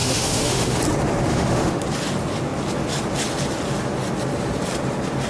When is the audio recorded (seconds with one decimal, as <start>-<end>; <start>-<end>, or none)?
0.8-1.3; 1.8-5.3